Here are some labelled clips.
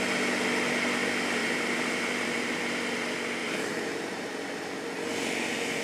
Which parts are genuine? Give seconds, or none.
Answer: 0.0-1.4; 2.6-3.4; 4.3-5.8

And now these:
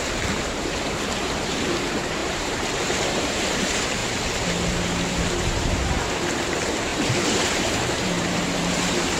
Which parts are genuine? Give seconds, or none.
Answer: 4.0-5.1

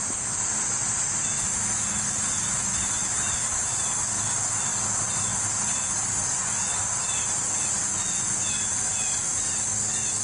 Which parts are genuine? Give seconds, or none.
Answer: 0.0-10.2

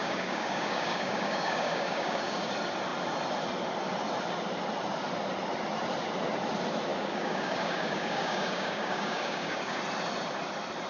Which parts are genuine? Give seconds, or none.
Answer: 2.5-6.9; 9.8-10.9